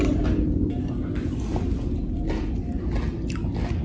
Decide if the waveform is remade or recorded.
recorded